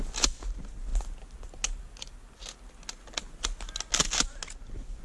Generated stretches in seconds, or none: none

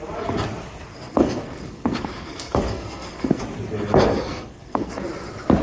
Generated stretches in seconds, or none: 1.1-3.4 (codec, SNAC); 4.1-5.0

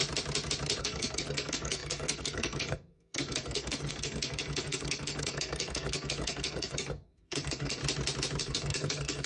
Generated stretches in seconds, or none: 0.8-7.8 (codec, SNAC); 8.4-9.3

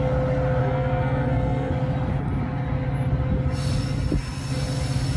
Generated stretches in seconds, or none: 0.6-1.7 (codec, SNAC)

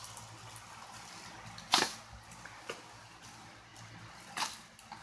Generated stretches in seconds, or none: none